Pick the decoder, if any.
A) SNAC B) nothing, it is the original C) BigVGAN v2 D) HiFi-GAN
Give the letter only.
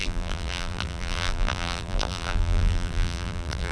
C